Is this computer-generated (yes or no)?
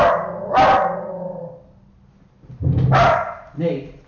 no